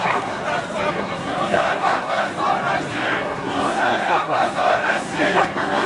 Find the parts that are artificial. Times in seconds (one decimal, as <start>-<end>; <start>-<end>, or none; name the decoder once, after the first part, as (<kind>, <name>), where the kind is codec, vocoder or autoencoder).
0.0-0.4 (codec, SNAC); 0.9-2.3; 2.9-5.9